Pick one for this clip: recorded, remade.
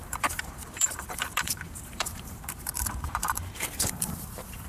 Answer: remade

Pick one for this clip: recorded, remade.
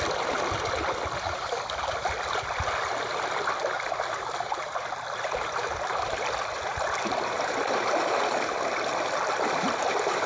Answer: recorded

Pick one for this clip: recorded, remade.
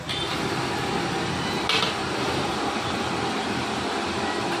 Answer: recorded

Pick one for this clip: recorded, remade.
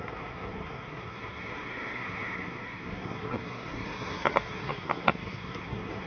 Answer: remade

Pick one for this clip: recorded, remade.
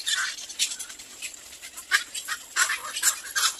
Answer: recorded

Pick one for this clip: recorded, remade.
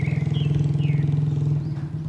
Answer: recorded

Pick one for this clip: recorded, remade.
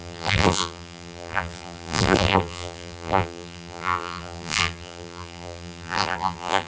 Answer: remade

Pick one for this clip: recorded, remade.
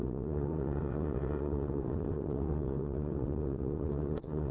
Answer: remade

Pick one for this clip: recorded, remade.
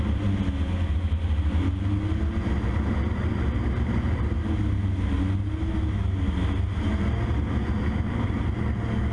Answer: recorded